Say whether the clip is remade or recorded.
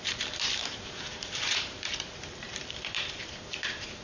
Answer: remade